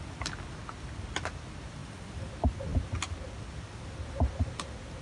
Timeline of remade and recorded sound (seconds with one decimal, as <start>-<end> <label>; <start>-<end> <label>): 0.0-1.8 recorded; 1.8-2.3 remade; 2.3-5.0 recorded